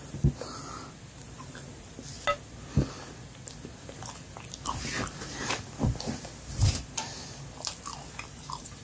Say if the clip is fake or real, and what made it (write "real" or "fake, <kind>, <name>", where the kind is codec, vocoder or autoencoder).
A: real